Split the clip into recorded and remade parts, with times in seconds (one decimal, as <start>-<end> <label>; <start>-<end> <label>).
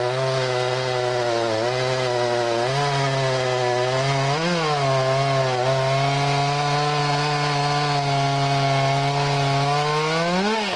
0.0-10.8 recorded